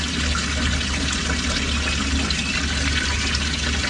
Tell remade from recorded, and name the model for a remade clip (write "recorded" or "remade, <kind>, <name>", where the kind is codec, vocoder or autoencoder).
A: recorded